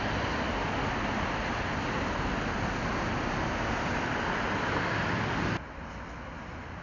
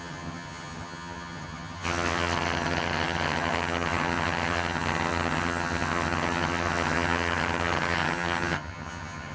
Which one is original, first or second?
first